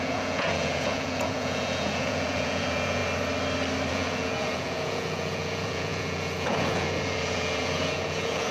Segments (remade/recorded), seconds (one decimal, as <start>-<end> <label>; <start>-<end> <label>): 0.0-3.0 remade; 3.0-3.9 recorded; 3.9-8.5 remade